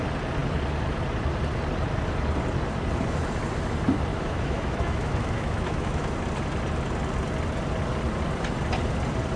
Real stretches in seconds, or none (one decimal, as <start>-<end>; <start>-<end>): 0.0-4.1; 6.1-9.4